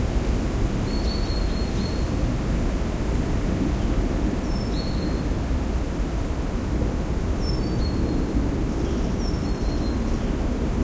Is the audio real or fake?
real